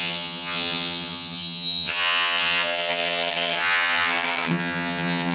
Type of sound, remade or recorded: remade